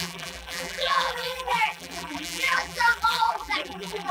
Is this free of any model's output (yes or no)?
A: no